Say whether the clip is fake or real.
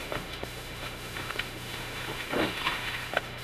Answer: fake